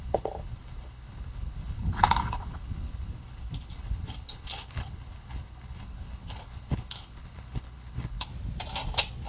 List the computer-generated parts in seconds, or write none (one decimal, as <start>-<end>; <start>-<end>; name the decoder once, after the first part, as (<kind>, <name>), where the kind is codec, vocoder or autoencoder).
0.0-8.3 (codec, HILCodec)